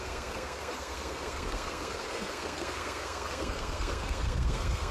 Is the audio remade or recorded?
remade